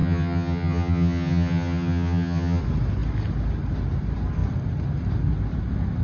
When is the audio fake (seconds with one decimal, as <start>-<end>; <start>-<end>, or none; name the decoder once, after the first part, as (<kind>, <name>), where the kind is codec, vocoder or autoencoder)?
0.0-2.6 (vocoder, HiFi-GAN)